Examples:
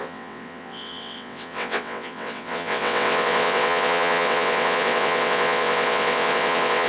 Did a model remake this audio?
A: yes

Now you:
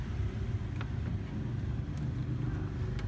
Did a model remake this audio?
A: no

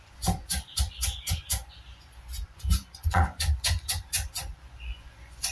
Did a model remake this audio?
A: yes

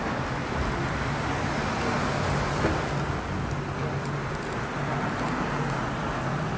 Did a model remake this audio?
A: no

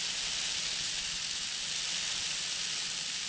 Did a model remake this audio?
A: no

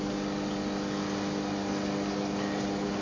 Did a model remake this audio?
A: no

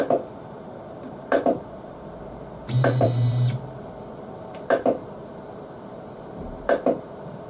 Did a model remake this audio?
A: yes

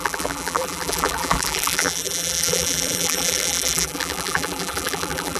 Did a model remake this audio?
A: yes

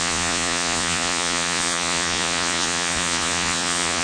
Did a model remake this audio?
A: yes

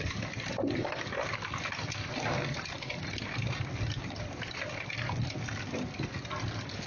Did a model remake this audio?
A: yes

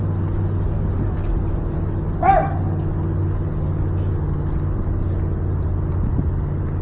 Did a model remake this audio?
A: no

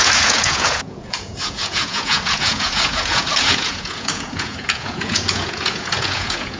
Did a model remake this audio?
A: yes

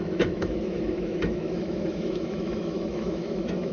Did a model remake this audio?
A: yes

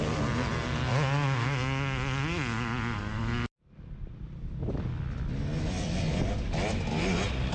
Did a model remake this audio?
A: no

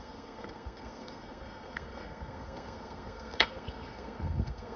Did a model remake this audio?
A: yes